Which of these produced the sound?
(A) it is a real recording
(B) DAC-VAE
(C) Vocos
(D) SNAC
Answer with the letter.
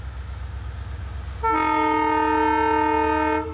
A